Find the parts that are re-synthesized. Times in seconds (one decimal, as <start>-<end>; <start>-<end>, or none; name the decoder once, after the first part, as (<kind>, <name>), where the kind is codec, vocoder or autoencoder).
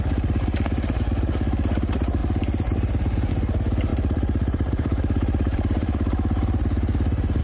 2.2-3.3 (vocoder, BigVGAN v2); 3.9-7.4